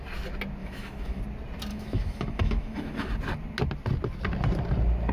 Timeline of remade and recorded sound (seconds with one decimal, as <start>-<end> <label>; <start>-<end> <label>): 0.0-0.6 recorded; 0.6-1.2 remade; 1.2-1.7 recorded; 1.7-3.1 remade; 3.1-5.1 recorded